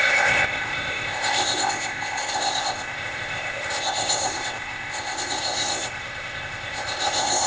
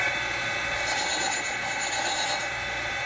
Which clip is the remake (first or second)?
first